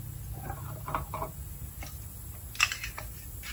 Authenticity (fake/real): real